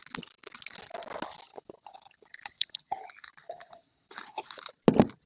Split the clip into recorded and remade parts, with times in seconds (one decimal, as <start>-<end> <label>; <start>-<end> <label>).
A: 0.0-1.5 recorded; 1.5-4.7 remade; 4.7-5.3 recorded